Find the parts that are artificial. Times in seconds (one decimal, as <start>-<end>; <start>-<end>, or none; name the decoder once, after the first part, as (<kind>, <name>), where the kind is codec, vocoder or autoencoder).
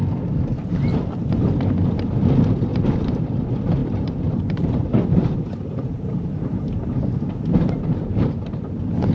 0.9-1.4 (vocoder, BigVGAN v2); 2.7-3.3; 3.8-8.6